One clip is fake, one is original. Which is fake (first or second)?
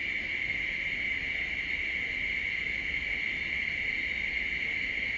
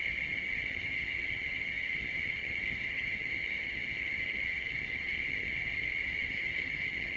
second